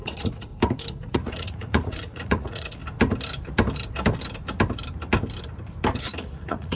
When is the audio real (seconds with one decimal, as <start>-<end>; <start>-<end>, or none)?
0.5-1.1; 2.8-6.0